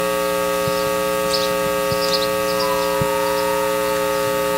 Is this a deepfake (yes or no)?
no